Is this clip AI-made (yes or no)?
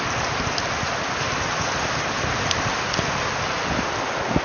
no